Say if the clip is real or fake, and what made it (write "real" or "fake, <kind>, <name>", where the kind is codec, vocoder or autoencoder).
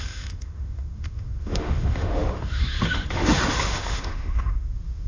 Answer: fake, autoencoder, DAC-VAE